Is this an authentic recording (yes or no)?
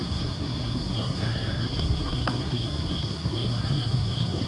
no